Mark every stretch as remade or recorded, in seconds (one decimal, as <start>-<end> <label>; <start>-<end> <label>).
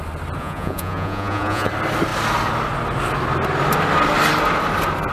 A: 0.0-0.4 recorded; 0.4-1.7 remade; 1.7-5.1 recorded